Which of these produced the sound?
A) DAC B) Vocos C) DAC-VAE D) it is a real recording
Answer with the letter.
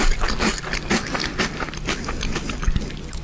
D